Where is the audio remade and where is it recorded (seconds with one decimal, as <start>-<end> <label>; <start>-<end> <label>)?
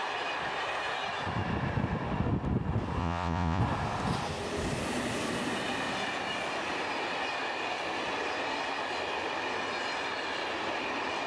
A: 0.0-3.0 recorded; 3.0-3.6 remade; 3.6-11.3 recorded